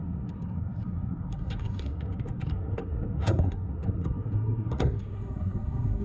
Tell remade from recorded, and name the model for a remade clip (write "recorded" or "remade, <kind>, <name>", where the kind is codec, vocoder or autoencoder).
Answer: remade, codec, SNAC